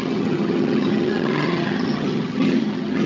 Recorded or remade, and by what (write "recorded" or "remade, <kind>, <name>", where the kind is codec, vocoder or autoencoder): remade, vocoder, HiFi-GAN